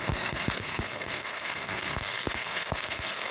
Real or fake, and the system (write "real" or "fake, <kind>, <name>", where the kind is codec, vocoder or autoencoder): fake, codec, SNAC